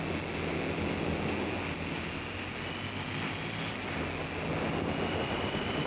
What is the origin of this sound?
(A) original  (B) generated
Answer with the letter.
A